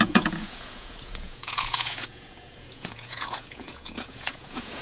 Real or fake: fake